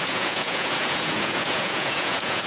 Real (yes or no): no